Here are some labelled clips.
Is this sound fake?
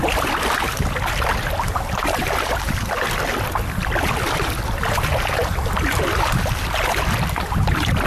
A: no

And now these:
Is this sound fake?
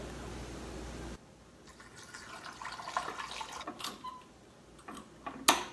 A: no